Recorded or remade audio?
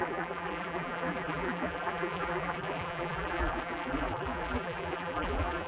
remade